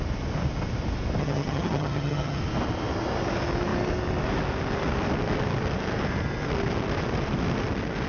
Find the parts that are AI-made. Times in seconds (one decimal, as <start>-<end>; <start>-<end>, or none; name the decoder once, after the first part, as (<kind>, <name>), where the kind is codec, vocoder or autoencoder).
1.2-2.4 (vocoder, HiFi-GAN)